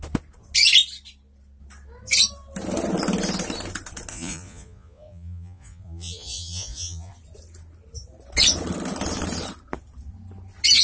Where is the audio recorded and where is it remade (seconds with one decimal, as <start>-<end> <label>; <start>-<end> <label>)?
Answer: 0.0-4.1 recorded; 4.1-7.1 remade; 7.1-10.8 recorded